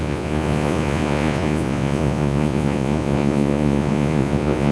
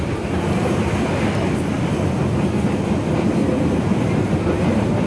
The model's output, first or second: first